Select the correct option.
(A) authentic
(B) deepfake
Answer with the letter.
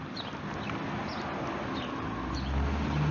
A